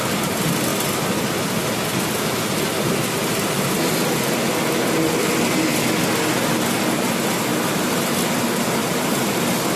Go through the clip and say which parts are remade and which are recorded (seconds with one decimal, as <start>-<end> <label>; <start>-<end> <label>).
0.0-7.5 recorded; 7.5-8.2 remade; 8.2-8.8 recorded; 8.8-9.4 remade; 9.4-9.8 recorded